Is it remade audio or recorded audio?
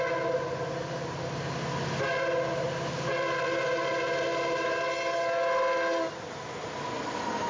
recorded